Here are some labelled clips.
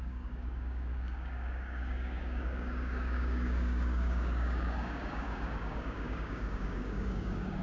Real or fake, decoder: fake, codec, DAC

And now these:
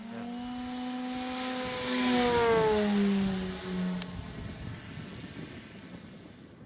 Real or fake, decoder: real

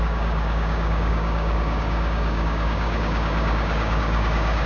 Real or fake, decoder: fake, codec, DAC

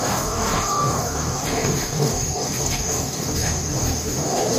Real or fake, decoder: fake, codec, DAC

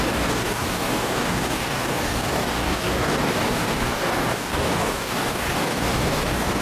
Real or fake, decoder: fake, codec, DAC